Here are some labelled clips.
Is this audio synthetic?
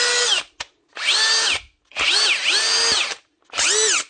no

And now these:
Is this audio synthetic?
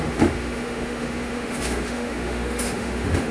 yes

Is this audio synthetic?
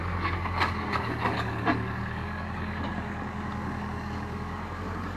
yes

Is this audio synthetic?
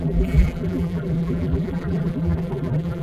yes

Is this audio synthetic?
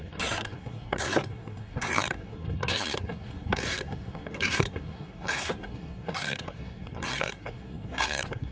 yes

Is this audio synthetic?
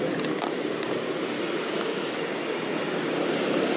no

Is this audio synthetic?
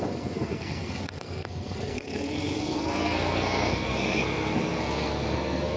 yes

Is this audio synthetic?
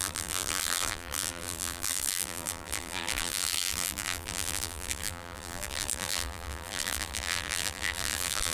yes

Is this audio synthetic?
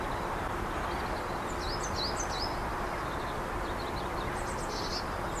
no